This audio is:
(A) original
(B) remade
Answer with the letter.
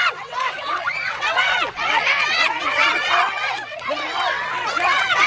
B